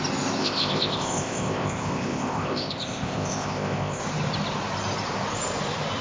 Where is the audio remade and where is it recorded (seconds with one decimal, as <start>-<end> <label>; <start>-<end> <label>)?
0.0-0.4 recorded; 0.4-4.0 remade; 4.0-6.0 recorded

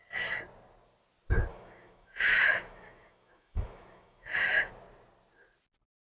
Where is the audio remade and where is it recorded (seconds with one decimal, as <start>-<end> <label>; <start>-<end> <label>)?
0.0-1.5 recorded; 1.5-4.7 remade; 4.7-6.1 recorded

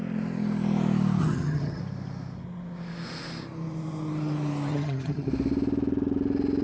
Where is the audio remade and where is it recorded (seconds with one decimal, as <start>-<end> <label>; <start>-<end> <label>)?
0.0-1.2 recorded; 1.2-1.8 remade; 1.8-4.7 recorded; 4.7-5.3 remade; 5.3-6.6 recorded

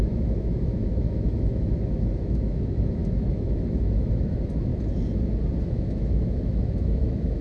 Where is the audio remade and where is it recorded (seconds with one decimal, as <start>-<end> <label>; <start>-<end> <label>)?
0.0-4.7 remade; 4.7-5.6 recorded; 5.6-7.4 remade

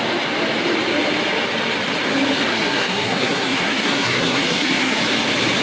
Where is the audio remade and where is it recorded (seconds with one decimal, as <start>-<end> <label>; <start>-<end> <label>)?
0.0-2.5 recorded; 2.5-5.0 remade; 5.0-5.6 recorded

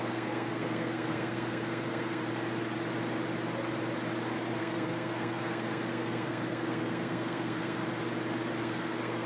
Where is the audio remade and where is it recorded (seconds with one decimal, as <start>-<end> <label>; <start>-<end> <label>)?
0.0-2.2 remade; 2.2-4.6 recorded; 4.6-7.8 remade; 7.8-8.6 recorded; 8.6-9.3 remade

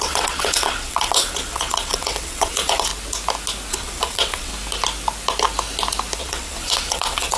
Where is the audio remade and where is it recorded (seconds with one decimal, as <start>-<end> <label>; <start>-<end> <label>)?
0.0-2.9 remade; 2.9-3.7 recorded; 3.7-4.5 remade; 4.5-6.2 recorded; 6.2-7.4 remade